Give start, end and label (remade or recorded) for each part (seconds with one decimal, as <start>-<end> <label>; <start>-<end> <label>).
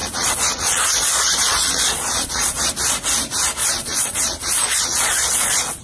0.0-2.7 remade; 2.7-3.6 recorded; 3.6-5.8 remade